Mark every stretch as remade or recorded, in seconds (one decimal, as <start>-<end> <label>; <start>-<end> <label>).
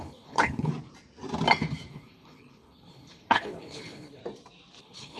0.0-0.7 remade; 0.7-1.9 recorded; 1.9-4.2 remade; 4.2-4.8 recorded; 4.8-5.2 remade